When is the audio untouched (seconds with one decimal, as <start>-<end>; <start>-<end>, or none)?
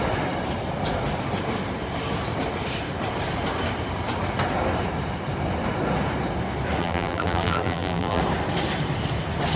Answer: 0.0-6.8; 8.2-9.6